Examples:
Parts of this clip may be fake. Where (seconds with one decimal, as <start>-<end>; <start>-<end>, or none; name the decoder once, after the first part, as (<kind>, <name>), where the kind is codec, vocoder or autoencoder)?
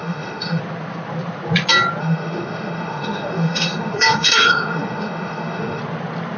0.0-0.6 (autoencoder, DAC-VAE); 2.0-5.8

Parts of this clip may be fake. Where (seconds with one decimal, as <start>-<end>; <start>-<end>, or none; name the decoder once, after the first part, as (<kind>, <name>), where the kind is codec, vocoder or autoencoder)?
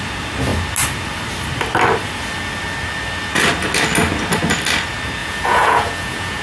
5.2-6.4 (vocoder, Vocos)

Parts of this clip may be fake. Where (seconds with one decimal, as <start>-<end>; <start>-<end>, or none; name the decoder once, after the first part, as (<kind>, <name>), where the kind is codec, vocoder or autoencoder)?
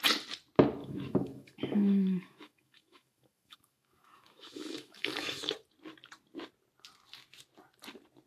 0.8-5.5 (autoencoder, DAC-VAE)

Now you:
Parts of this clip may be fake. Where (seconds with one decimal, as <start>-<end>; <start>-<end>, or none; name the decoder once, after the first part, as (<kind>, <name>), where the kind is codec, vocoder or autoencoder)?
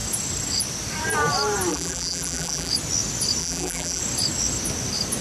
1.7-2.7 (vocoder, BigVGAN v2); 3.4-4.0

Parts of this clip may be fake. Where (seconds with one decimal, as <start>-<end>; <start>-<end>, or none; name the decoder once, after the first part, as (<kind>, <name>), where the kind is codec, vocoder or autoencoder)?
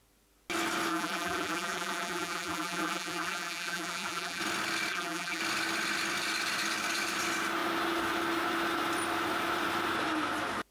0.9-4.4 (vocoder, BigVGAN v2); 4.9-5.4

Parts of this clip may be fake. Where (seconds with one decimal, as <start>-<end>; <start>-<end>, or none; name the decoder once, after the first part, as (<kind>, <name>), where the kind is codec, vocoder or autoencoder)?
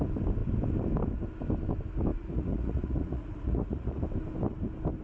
2.1-4.0 (vocoder, Vocos)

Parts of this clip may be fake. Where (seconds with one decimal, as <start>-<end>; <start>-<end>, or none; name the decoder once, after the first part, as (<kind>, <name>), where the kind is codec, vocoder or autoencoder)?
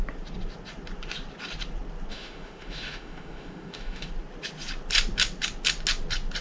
2.1-4.1 (autoencoder, DAC-VAE)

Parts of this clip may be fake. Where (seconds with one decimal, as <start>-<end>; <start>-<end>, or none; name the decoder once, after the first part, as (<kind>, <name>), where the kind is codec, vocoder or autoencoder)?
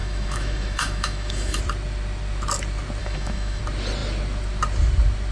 0.0-1.6 (autoencoder, DAC-VAE); 3.0-3.6